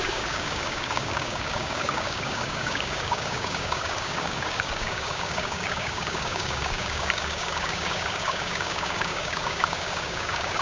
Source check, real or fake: fake